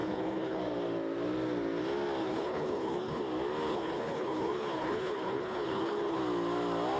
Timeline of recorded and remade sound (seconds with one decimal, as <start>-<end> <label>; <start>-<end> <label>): 0.0-0.6 remade; 0.6-2.2 recorded; 2.2-3.2 remade; 3.2-3.7 recorded; 3.7-6.2 remade; 6.2-7.0 recorded